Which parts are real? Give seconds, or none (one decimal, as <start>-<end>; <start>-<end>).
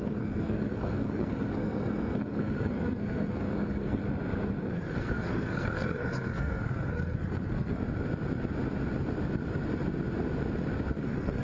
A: 4.0-4.6; 7.8-10.9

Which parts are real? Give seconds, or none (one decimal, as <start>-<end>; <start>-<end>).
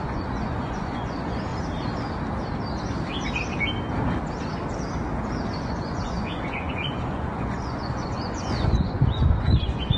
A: 1.5-5.6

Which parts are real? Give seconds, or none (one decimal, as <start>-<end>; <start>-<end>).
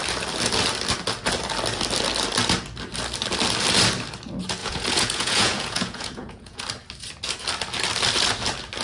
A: 0.0-4.6; 6.6-8.8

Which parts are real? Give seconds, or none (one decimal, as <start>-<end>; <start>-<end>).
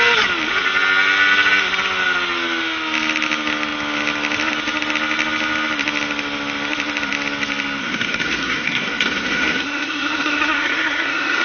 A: 0.0-7.8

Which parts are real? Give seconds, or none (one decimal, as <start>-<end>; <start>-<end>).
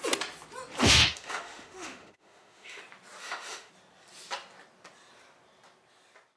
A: 0.0-0.8; 2.8-3.2; 3.7-6.4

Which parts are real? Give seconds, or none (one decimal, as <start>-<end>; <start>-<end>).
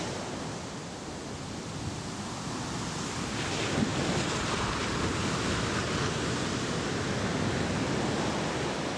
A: 0.0-9.0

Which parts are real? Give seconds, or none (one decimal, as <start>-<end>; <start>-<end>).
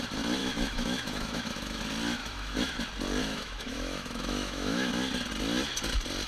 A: 0.0-0.4; 1.8-2.2; 2.8-3.2; 4.9-6.3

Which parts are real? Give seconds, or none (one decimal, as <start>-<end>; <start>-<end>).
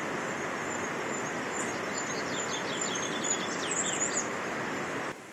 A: 0.0-5.3